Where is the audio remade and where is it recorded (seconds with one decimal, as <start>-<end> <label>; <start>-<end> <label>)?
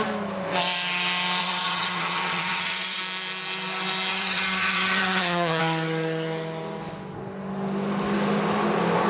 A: 0.0-1.4 recorded; 1.4-3.0 remade; 3.0-4.1 recorded; 4.1-5.6 remade; 5.6-9.1 recorded